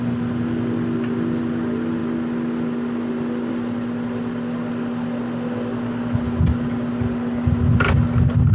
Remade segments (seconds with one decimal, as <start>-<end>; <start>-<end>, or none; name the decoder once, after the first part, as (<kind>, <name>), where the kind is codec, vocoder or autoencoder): none